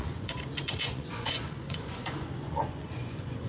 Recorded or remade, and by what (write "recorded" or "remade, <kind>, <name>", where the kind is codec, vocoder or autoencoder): remade, vocoder, Vocos